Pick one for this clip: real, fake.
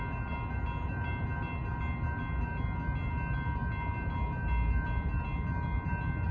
real